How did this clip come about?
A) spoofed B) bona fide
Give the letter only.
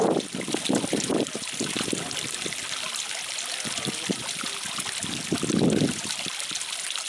B